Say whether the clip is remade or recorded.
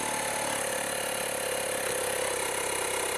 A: recorded